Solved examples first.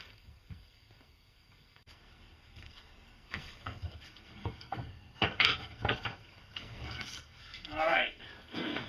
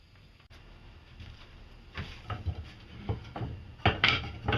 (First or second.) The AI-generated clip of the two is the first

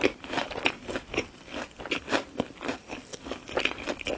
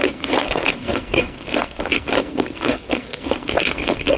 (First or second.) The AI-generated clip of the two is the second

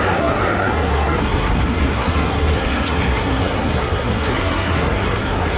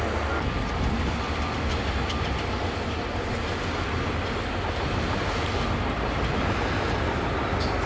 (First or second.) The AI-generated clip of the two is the first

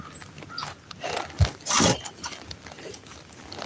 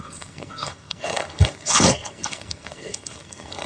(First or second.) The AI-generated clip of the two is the second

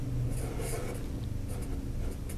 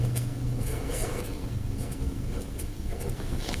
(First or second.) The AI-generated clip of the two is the second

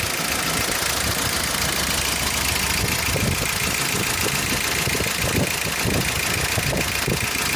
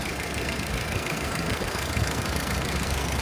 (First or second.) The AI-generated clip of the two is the second